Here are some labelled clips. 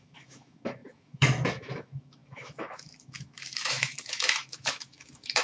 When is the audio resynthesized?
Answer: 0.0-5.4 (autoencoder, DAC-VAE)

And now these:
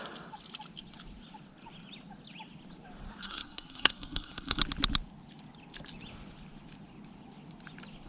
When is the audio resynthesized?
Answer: 3.2-4.6 (codec, SNAC)

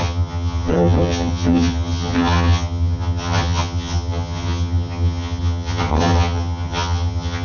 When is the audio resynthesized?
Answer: 0.0-7.4 (vocoder, HiFi-GAN)

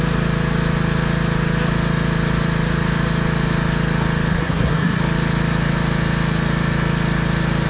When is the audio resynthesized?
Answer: 4.3-5.0 (codec, SNAC)

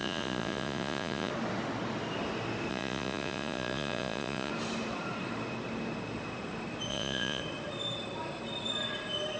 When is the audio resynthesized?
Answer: 0.0-1.3 (vocoder, Vocos); 2.7-4.5; 6.9-7.4

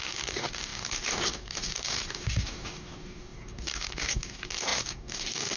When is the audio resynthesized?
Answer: 0.0-5.6 (codec, DAC)

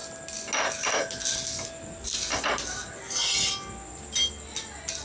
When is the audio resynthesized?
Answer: none

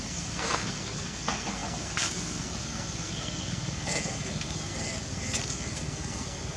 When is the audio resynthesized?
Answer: 0.0-6.6 (codec, SNAC)